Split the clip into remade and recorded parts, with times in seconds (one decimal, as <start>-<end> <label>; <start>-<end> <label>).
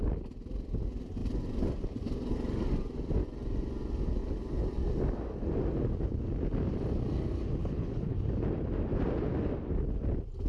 0.0-7.6 recorded; 7.6-8.3 remade; 8.3-10.5 recorded